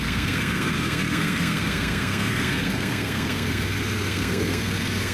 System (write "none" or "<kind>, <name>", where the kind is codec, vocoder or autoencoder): codec, SNAC